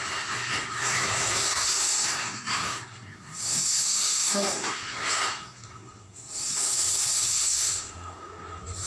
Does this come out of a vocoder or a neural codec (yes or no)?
yes